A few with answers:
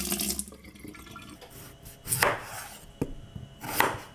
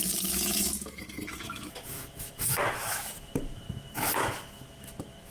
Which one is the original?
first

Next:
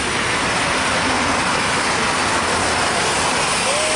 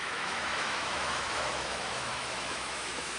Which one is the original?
first